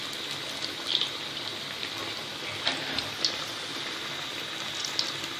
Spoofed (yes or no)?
no